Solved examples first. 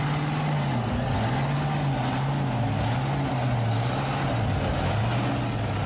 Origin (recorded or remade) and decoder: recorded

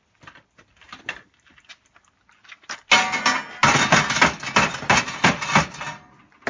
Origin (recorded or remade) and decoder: recorded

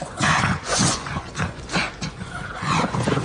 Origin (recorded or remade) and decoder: remade, vocoder, Vocos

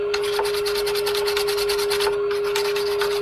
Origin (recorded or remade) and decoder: recorded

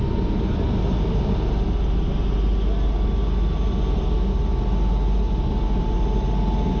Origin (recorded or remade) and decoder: recorded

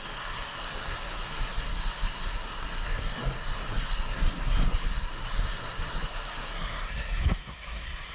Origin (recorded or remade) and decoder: remade, codec, SNAC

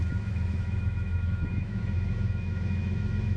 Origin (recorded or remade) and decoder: remade, autoencoder, DAC-VAE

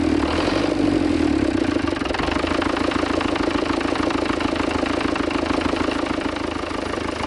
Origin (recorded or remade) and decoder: recorded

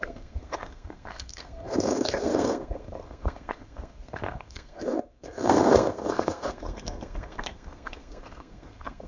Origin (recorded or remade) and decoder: remade, codec, SNAC